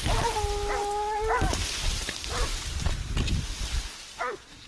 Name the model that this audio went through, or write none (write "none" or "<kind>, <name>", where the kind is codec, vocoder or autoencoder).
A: none